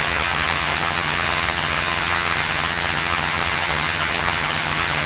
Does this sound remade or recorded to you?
remade